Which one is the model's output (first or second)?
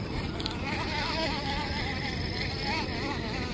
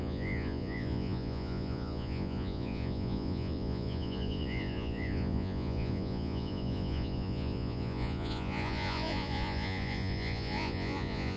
second